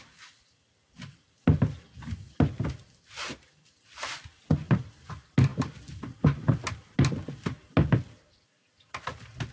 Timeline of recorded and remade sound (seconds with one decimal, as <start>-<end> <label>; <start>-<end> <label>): 0.0-9.5 recorded